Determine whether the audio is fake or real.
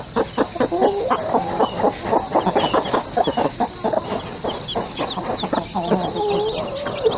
real